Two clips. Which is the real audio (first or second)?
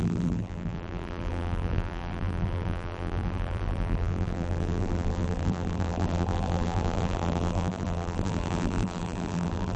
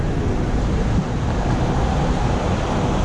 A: second